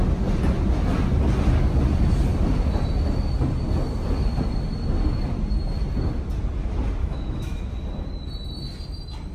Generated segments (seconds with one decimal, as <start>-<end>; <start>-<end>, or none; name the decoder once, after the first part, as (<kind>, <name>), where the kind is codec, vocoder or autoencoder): 7.0-7.7 (autoencoder, DAC-VAE)